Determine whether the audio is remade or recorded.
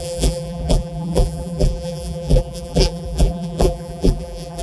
remade